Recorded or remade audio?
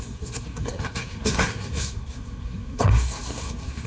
remade